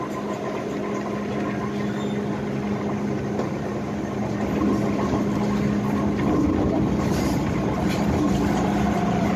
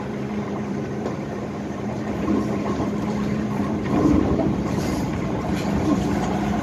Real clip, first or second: first